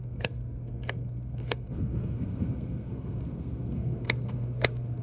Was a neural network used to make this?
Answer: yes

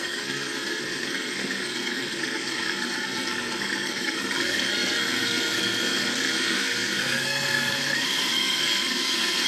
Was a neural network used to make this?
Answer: yes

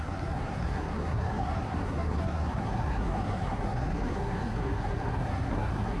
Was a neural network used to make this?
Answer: yes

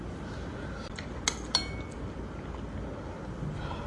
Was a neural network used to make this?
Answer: no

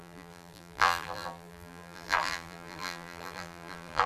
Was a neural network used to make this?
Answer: yes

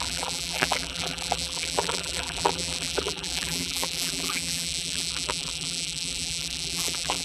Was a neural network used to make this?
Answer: yes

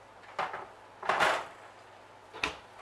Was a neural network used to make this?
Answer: no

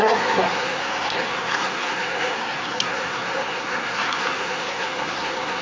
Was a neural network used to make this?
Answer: yes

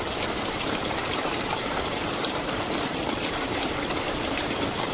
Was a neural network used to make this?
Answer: yes